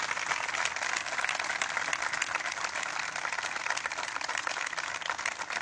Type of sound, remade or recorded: recorded